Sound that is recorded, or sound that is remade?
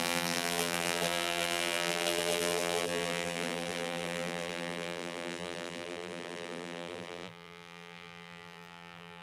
remade